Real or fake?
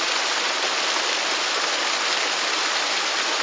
real